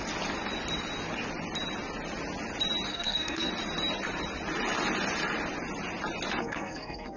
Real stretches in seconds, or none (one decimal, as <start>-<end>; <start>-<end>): 0.0-2.9; 3.5-6.4